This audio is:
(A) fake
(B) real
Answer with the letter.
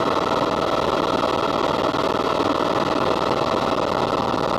B